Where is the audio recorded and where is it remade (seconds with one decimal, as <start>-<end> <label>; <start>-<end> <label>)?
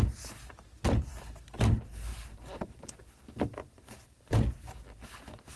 0.0-2.1 recorded; 2.1-4.2 remade; 4.2-5.6 recorded